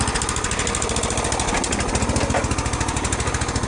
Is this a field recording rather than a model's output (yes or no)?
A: yes